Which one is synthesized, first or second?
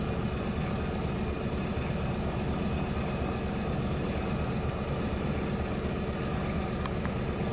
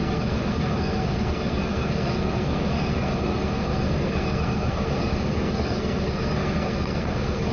second